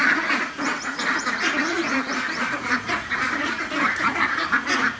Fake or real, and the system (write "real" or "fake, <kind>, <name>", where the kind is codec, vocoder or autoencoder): fake, vocoder, Vocos